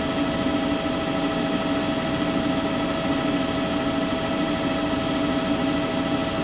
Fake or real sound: real